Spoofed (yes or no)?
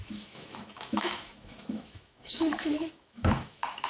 yes